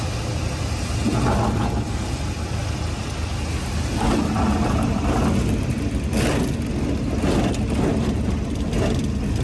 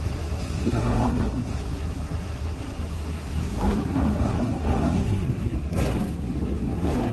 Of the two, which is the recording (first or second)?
first